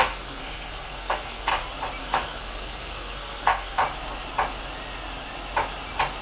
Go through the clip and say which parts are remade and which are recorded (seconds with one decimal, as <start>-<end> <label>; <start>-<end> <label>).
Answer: 0.0-1.5 remade; 1.5-2.0 recorded; 2.0-3.8 remade; 3.8-6.2 recorded